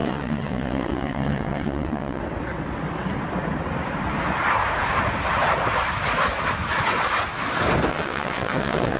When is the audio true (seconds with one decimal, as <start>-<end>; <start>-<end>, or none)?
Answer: 2.2-7.9